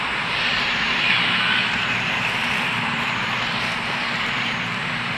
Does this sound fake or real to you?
fake